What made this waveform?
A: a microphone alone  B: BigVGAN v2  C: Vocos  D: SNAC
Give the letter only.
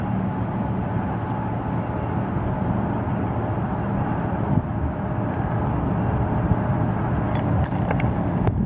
A